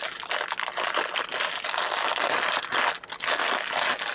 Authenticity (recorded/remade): recorded